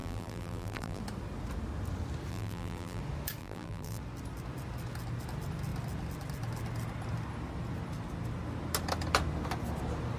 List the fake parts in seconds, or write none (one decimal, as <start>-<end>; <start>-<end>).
0.0-1.0; 2.3-3.0; 3.4-4.0